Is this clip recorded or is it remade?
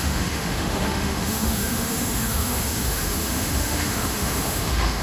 remade